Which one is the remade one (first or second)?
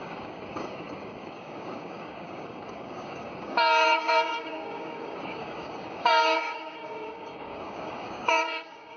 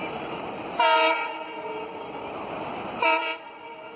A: first